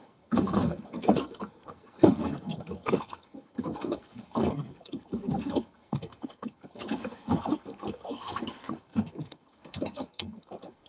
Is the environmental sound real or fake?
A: fake